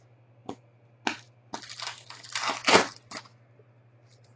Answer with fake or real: real